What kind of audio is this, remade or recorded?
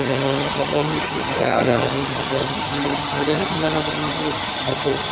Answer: remade